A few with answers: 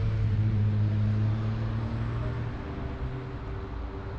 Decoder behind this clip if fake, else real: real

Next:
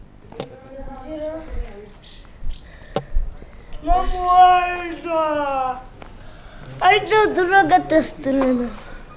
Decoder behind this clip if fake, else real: real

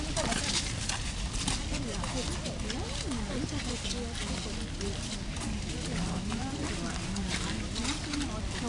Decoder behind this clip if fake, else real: real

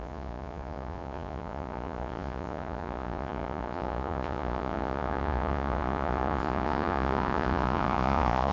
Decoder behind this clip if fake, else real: fake, vocoder, Vocos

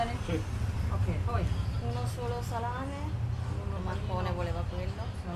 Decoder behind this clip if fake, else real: real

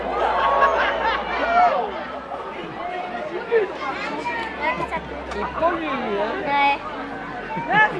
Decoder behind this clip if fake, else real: real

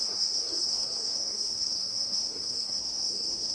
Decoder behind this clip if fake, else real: fake, codec, SNAC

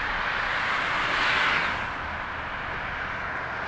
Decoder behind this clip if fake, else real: real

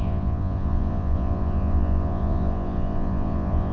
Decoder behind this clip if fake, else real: fake, vocoder, Vocos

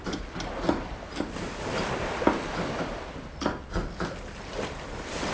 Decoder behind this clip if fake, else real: real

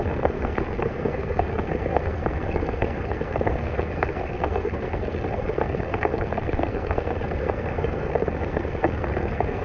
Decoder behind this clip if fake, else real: fake, codec, SNAC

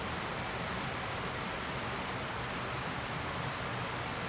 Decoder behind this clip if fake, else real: real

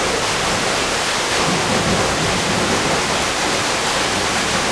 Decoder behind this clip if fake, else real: real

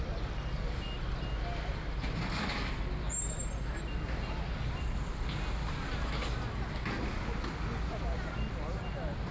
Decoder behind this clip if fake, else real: real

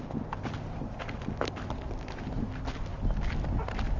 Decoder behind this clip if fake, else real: real